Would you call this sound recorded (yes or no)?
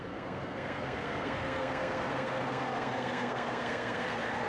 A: no